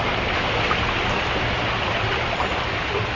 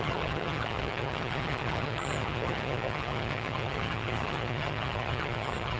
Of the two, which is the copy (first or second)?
second